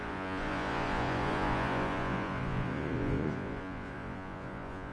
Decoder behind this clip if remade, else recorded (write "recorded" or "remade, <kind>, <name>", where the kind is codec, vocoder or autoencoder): remade, vocoder, Vocos